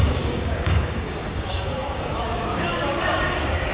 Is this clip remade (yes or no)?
yes